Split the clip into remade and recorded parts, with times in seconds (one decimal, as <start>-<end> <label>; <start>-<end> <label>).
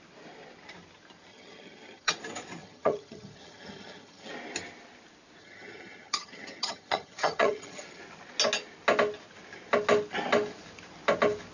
0.0-1.3 recorded; 1.3-2.1 remade; 2.1-2.6 recorded; 2.6-4.3 remade; 4.3-5.4 recorded; 5.4-8.0 remade; 8.0-11.5 recorded